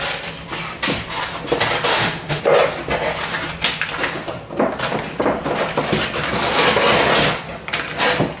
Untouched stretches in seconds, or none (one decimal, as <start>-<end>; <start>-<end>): 0.0-1.9; 2.4-8.4